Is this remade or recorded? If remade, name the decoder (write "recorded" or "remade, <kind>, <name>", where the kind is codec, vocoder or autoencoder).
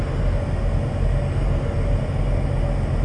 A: recorded